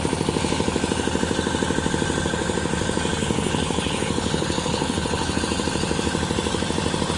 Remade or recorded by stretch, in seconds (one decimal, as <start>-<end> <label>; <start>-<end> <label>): 0.0-3.2 recorded; 3.2-5.4 remade; 5.4-7.2 recorded